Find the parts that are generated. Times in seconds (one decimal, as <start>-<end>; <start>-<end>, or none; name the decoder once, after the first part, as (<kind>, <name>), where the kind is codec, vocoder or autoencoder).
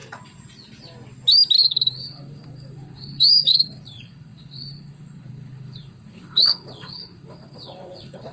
1.6-8.3 (codec, HILCodec)